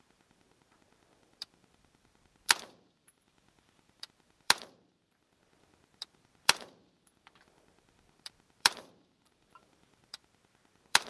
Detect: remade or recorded remade